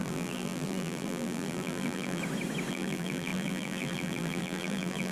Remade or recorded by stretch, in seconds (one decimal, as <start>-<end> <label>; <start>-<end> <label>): 0.0-2.2 remade; 2.2-2.7 recorded; 2.7-5.1 remade